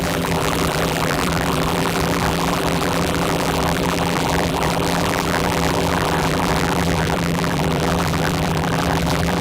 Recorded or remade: remade